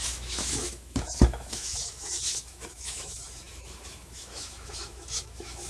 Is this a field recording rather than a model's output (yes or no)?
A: no